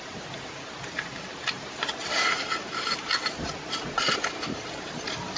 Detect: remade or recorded recorded